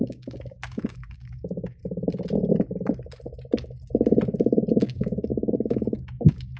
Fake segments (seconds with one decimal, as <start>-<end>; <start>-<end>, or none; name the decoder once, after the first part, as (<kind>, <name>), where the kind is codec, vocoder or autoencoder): 0.0-1.8 (codec, DAC); 4.7-6.6